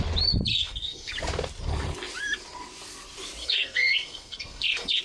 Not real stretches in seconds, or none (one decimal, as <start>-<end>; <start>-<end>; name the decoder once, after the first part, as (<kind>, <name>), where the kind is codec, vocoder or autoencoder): 0.5-1.1 (codec, SNAC); 3.4-5.0